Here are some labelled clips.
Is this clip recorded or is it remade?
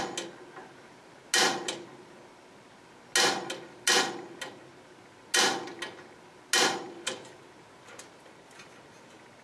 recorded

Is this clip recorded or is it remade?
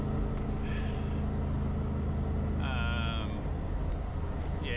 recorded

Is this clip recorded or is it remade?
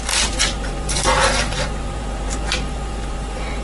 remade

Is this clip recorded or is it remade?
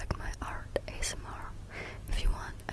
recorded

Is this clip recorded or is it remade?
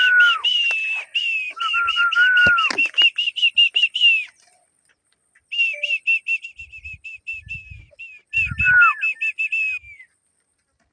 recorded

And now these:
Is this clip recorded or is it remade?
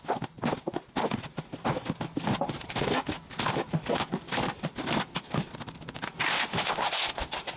recorded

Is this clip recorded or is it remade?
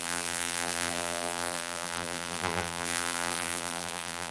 remade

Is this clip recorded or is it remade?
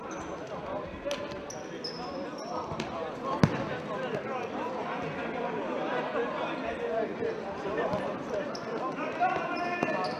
recorded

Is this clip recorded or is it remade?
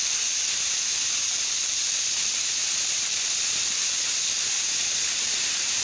remade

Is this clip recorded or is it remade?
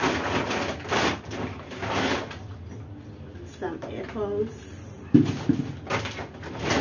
recorded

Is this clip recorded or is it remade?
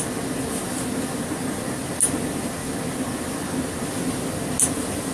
recorded